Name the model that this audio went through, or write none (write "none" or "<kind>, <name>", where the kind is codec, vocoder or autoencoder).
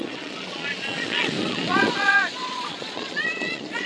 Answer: vocoder, Vocos